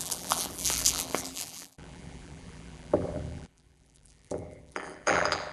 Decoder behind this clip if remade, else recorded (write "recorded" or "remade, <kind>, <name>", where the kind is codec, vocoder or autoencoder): remade, vocoder, BigVGAN v2